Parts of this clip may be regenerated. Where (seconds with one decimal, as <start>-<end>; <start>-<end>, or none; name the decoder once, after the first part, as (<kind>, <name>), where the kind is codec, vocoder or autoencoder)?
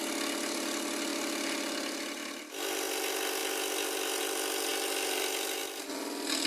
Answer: 1.1-2.5 (vocoder, BigVGAN v2); 3.4-4.2; 4.7-5.6